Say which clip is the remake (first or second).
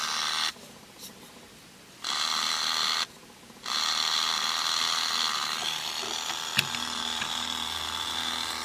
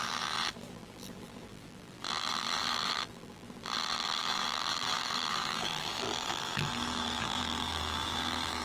second